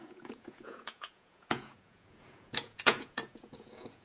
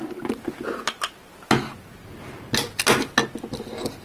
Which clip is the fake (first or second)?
first